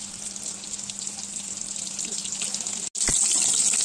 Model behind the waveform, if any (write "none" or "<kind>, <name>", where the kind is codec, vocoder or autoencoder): none